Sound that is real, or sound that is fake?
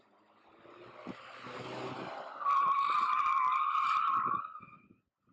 real